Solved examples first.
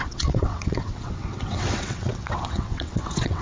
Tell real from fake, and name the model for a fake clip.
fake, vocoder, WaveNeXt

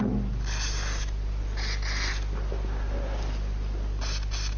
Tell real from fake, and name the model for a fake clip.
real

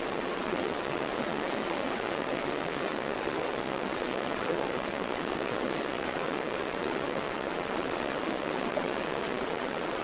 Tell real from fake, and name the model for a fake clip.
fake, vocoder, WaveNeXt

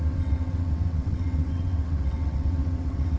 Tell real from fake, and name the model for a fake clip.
fake, vocoder, WaveNeXt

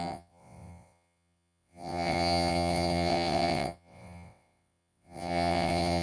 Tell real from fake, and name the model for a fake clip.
fake, vocoder, WaveNeXt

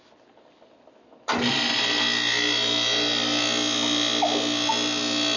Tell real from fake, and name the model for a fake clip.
real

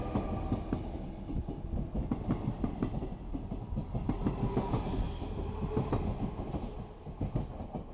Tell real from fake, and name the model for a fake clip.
real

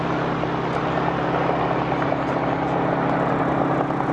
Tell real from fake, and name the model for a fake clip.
real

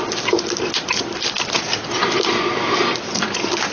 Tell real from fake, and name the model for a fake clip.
real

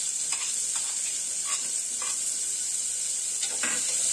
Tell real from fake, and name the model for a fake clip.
real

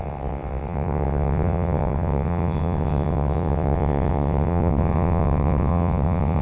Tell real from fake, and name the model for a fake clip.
fake, vocoder, WaveNeXt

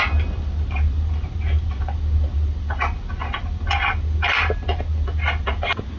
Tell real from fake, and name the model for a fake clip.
real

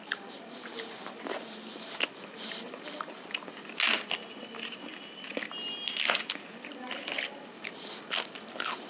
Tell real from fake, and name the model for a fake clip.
real